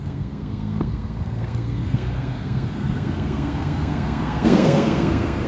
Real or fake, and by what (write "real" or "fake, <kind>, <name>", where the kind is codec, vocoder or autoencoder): fake, codec, SNAC